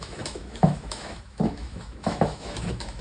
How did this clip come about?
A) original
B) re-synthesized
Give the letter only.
B